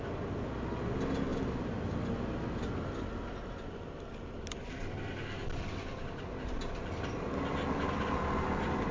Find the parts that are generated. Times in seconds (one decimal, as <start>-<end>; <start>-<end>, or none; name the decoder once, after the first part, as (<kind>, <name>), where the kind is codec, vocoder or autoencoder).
none

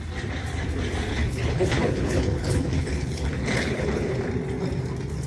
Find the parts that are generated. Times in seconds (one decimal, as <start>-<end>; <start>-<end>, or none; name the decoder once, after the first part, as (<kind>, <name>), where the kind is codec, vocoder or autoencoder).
1.1-4.3 (codec, HILCodec)

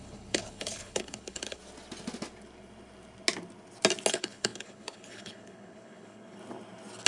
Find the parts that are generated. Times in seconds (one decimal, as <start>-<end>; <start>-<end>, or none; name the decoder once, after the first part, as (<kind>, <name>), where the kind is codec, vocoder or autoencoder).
0.0-1.6 (codec, HILCodec); 4.1-6.4

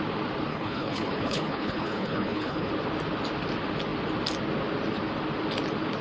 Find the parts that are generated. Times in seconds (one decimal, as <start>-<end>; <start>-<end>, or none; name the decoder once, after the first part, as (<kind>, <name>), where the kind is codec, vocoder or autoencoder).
0.5-2.7 (codec, HILCodec)

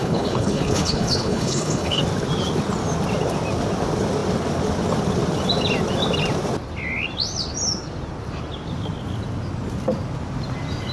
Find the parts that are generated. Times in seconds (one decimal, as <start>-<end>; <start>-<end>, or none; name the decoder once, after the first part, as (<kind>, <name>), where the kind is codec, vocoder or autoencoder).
0.0-2.0 (codec, HILCodec)

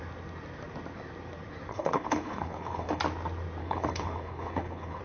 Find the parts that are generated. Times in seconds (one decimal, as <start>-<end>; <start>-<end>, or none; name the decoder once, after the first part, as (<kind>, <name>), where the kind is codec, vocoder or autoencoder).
1.7-3.0 (codec, HILCodec); 3.6-5.0

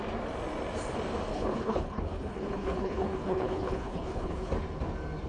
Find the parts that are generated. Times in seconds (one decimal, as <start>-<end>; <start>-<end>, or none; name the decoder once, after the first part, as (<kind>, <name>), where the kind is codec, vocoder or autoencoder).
1.3-4.5 (codec, HILCodec)

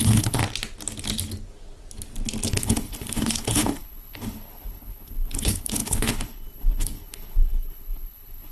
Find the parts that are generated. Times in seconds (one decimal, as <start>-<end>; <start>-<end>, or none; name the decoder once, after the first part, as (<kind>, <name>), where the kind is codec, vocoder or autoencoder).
0.0-0.4 (codec, HILCodec); 2.5-8.5